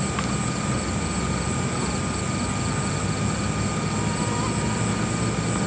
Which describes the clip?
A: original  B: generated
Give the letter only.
A